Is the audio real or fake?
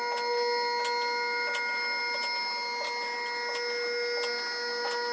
real